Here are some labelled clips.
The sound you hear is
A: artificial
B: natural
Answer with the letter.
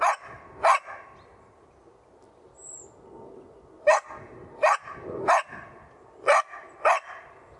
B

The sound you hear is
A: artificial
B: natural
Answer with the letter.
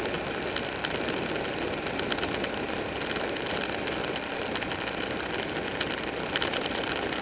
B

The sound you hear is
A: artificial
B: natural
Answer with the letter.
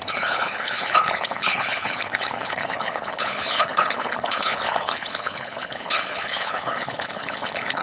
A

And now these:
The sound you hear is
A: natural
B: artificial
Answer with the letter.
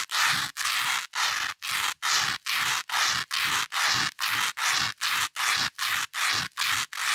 A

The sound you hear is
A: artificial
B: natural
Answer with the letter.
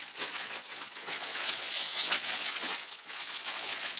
A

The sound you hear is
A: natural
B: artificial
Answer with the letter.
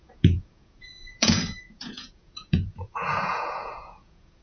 B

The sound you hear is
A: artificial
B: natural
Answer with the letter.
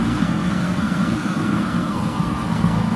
A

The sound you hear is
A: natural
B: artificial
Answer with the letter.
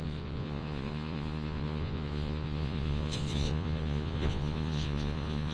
B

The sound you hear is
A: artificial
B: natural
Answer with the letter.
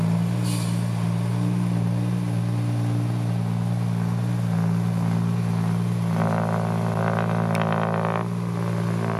B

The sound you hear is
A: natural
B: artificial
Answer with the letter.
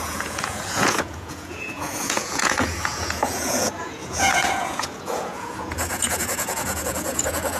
B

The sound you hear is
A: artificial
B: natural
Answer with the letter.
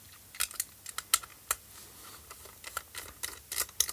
B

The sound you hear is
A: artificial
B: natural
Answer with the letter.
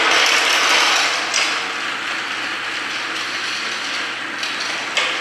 B